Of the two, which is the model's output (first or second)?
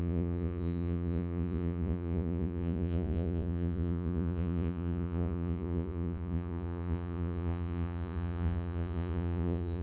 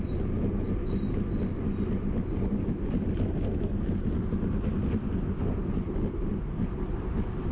first